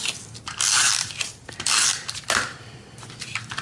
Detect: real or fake fake